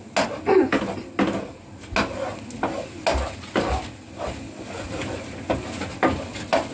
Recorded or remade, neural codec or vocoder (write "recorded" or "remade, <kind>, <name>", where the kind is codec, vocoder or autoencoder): recorded